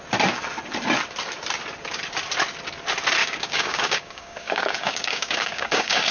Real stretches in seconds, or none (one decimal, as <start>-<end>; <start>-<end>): 0.0-3.2